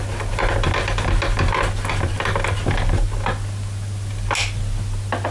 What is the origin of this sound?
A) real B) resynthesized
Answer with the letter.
A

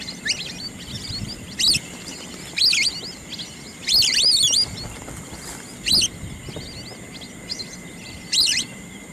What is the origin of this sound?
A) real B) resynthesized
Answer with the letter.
A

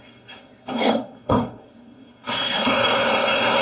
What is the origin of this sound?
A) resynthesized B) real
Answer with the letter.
A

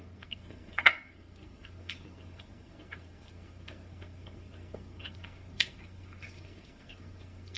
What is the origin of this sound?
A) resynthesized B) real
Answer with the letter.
A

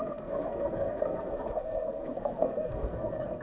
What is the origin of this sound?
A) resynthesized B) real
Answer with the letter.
A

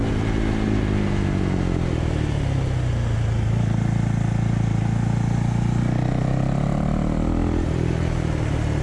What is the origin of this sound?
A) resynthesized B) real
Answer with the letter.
B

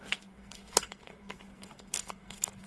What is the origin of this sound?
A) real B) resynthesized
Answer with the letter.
B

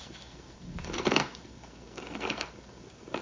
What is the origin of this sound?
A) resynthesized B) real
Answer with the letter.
A